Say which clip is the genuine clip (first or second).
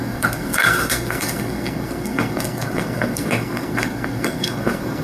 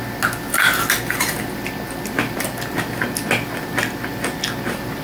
second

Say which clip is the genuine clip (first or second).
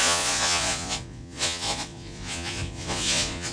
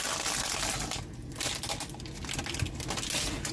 second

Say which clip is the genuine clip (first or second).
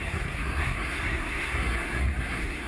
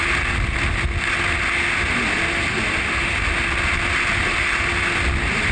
second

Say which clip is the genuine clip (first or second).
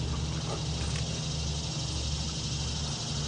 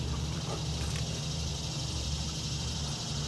first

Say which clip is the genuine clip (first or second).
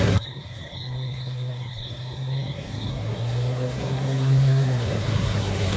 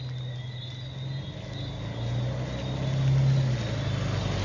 second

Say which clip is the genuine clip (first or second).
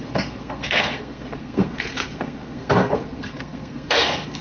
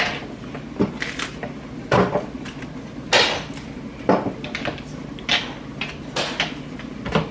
second